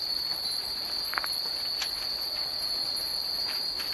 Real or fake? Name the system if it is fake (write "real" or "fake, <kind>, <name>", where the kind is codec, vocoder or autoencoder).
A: real